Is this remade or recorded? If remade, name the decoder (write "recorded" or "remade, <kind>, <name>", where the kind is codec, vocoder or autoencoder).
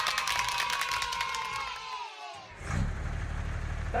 recorded